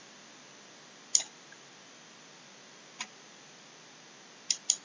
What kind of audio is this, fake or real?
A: real